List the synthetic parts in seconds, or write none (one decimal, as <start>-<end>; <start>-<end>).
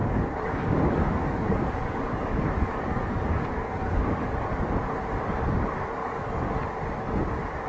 0.0-4.6; 6.0-6.5